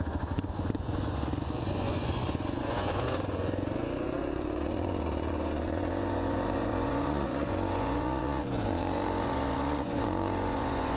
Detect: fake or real fake